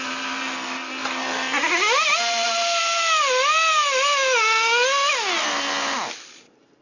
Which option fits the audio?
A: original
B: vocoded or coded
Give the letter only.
A